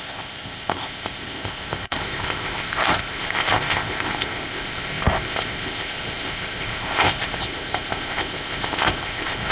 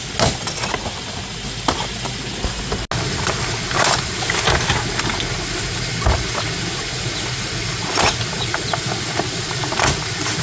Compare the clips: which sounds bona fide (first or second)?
second